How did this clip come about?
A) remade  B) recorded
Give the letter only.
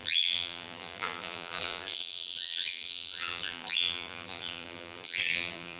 A